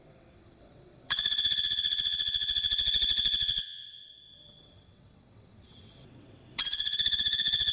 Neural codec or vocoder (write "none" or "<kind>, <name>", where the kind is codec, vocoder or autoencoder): vocoder, WaveNeXt